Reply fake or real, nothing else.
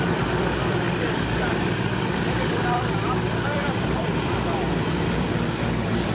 fake